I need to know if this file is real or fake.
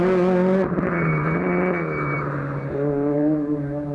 real